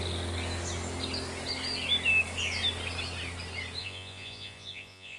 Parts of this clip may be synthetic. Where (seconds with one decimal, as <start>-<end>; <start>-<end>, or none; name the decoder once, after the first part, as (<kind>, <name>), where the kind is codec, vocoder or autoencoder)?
3.8-5.2 (vocoder, Vocos)